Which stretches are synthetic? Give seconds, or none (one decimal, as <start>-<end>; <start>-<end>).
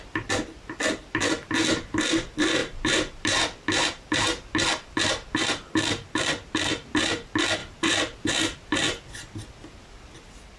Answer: 2.6-5.1; 7.6-9.3